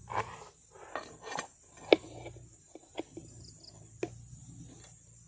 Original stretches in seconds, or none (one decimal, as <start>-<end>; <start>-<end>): 0.0-5.3

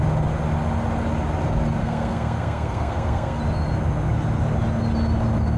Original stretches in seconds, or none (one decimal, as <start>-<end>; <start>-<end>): 0.0-1.8; 3.4-5.6

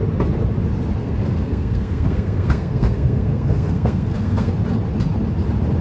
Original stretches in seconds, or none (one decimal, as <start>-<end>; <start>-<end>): 0.0-1.0; 4.5-5.8

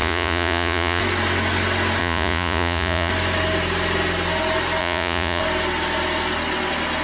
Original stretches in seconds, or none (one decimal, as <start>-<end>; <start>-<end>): 1.0-2.0; 3.1-4.8; 5.4-7.0

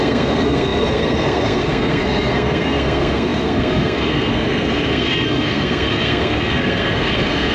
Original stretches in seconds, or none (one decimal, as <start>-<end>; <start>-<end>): none

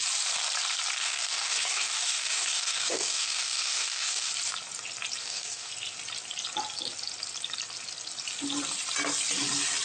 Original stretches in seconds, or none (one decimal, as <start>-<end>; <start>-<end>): 0.0-1.0; 4.3-5.2; 5.7-9.8

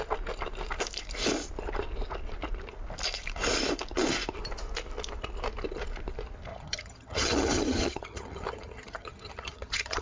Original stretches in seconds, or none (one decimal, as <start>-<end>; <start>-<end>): 0.0-6.5